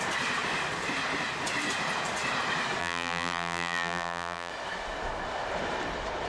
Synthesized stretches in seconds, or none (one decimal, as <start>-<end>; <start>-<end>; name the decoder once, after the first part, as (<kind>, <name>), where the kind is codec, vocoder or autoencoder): 2.8-4.5 (vocoder, BigVGAN v2)